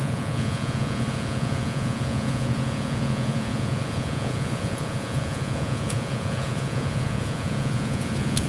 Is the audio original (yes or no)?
no